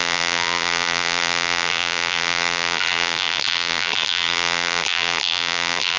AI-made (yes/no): yes